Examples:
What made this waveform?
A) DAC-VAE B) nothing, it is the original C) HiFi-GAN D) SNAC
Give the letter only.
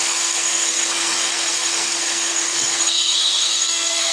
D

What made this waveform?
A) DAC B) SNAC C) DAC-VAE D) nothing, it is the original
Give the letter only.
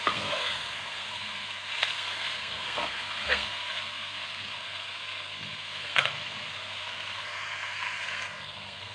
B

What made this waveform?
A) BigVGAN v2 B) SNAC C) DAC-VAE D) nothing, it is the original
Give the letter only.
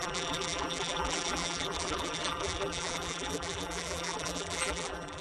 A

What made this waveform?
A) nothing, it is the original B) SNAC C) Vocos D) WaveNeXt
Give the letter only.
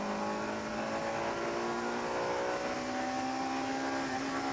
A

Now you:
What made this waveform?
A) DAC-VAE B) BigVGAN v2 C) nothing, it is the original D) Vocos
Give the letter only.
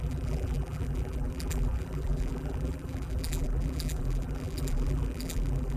B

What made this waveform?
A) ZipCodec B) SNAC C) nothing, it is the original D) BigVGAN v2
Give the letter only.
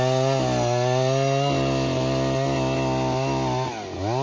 C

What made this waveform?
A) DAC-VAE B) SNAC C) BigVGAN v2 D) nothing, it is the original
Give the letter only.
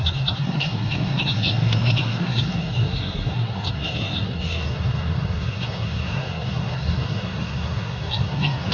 B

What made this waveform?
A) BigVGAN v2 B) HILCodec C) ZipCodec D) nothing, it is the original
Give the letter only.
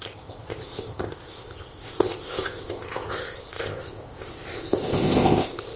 C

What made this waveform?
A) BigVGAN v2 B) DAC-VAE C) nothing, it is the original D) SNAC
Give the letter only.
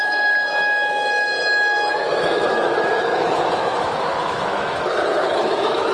B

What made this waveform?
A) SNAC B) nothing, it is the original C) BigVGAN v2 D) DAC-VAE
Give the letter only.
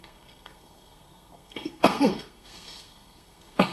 A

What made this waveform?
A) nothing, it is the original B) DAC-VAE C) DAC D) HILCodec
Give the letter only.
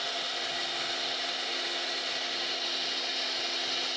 A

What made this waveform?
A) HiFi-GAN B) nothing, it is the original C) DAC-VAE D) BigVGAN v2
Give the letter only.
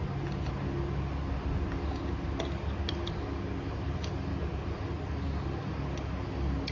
B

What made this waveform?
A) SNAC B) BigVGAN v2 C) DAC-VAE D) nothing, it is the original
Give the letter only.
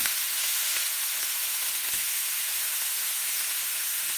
C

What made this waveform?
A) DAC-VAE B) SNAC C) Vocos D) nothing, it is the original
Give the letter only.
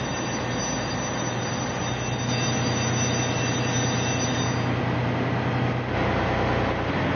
D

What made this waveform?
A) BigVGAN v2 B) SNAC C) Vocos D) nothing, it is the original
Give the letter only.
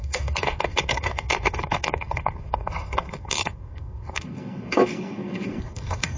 B